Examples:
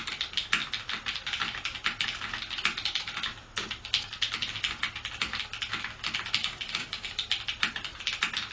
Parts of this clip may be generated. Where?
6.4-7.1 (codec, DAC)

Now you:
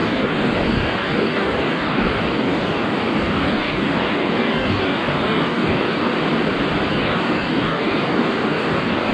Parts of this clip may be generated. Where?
0.0-6.1 (codec, DAC); 6.9-9.1

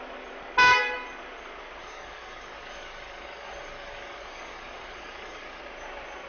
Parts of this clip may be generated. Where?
1.8-5.6 (codec, DAC)

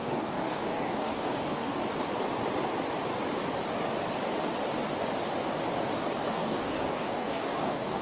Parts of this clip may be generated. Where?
0.0-1.8 (codec, DAC); 6.3-8.0

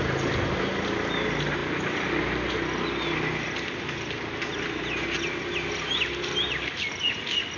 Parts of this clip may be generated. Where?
none

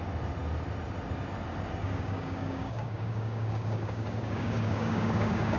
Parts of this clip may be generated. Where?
1.8-5.6 (codec, DAC)

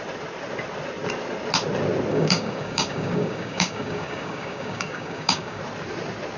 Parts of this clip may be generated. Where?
2.1-5.6 (codec, DAC)

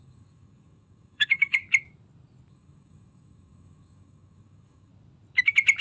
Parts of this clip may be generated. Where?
0.0-1.6 (codec, DAC); 2.5-4.9